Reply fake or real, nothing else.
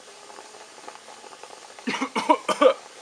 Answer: real